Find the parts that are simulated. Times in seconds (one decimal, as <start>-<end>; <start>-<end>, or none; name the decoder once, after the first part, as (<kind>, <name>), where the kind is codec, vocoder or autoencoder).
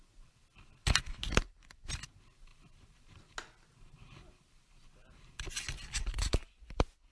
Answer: none